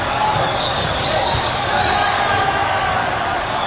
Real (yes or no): no